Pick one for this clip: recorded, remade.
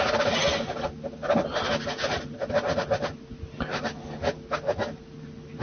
recorded